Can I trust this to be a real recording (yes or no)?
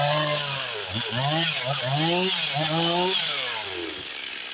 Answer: yes